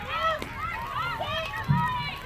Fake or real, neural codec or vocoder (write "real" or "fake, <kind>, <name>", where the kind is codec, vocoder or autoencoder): real